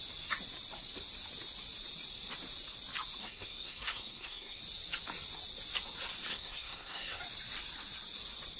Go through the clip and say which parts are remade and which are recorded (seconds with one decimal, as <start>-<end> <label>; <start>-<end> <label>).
0.0-3.2 recorded; 3.2-4.6 remade; 4.6-6.3 recorded; 6.3-7.2 remade; 7.2-8.6 recorded